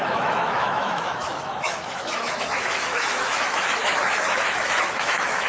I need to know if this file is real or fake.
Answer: fake